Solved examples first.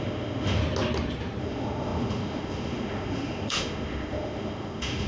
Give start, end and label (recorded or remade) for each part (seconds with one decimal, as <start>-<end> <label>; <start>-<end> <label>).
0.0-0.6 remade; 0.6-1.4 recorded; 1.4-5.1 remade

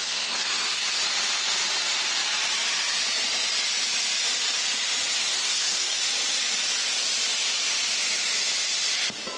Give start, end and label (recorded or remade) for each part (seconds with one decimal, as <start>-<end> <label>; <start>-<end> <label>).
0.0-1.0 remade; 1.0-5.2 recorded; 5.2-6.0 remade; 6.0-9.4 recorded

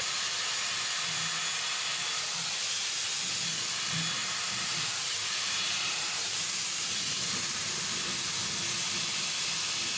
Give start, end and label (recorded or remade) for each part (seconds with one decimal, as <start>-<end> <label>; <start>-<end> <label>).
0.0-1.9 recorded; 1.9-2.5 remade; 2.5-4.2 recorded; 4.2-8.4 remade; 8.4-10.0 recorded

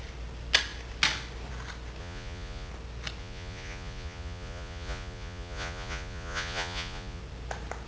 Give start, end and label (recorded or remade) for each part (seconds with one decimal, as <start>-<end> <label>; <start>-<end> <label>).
0.0-2.0 recorded; 2.0-2.7 remade; 2.7-3.2 recorded; 3.2-7.2 remade; 7.2-7.9 recorded

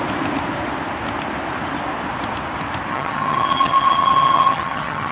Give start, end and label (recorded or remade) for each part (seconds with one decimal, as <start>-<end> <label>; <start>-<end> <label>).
0.0-2.9 recorded; 2.9-5.1 remade

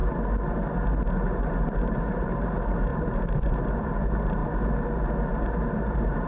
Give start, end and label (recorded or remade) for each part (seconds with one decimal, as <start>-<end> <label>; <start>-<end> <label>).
0.0-1.0 recorded; 1.0-4.4 remade; 4.4-5.7 recorded; 5.7-6.3 remade